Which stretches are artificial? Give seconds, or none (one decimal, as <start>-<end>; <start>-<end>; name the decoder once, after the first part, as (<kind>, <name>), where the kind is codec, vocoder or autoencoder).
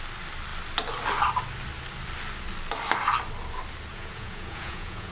3.9-5.1 (vocoder, Vocos)